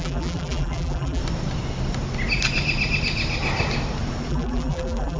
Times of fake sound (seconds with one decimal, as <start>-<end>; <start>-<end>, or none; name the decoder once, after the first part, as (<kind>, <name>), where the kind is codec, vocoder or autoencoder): 0.0-1.2 (vocoder, BigVGAN v2); 4.3-5.2

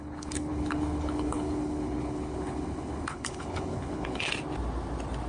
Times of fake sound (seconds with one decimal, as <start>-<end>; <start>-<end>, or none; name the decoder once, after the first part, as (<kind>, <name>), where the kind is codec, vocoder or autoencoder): 0.0-4.3 (codec, HILCodec)

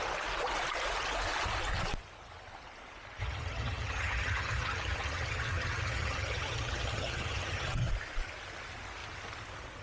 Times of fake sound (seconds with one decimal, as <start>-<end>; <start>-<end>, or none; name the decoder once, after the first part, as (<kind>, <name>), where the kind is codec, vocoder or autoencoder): 3.2-7.9 (vocoder, HiFi-GAN)

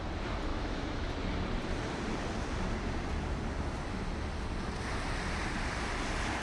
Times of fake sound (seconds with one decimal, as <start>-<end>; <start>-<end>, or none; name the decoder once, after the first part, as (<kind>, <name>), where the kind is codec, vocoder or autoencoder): 0.5-1.1 (autoencoder, DAC-VAE)

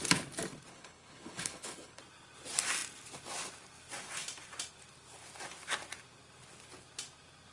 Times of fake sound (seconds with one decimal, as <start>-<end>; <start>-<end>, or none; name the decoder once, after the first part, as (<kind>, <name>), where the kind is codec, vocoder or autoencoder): 0.7-2.0 (codec, HILCodec)